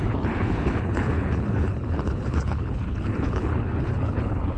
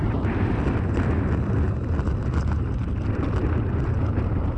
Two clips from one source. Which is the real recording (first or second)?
second